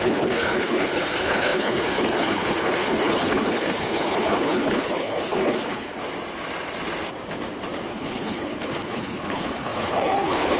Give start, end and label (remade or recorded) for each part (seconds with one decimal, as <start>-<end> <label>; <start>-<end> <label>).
0.0-6.0 remade; 6.0-7.9 recorded; 7.9-10.6 remade